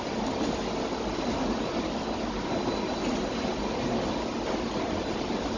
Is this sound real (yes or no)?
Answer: yes